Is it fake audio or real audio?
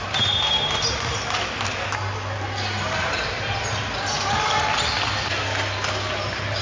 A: real